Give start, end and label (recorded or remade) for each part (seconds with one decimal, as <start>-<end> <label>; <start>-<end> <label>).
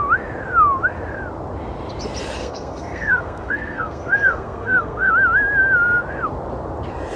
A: 0.0-2.4 recorded; 2.4-5.1 remade; 5.1-7.2 recorded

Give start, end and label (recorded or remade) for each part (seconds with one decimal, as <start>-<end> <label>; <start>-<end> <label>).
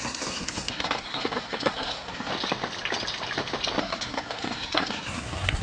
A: 0.0-2.3 remade; 2.3-3.8 recorded; 3.8-5.6 remade